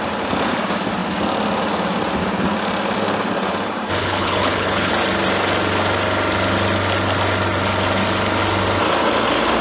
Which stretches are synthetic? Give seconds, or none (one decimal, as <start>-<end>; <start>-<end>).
4.0-4.9